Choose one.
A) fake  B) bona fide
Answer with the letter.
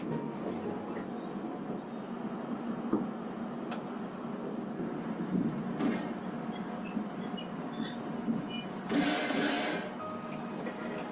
B